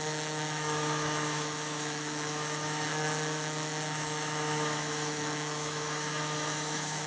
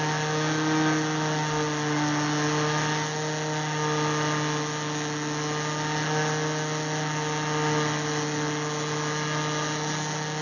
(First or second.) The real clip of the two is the second